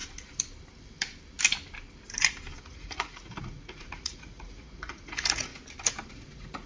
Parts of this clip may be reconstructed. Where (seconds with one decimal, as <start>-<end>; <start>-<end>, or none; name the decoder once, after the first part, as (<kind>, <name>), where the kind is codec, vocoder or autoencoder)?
2.6-5.5 (vocoder, Vocos); 6.1-6.7